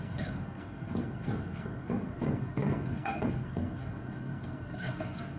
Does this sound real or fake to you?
fake